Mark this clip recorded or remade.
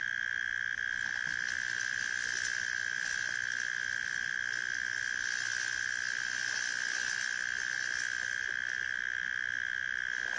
recorded